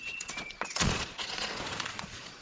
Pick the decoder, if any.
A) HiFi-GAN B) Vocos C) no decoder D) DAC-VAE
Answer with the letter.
B